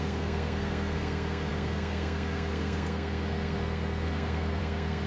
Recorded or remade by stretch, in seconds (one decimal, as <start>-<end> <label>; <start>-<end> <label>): 0.0-5.1 remade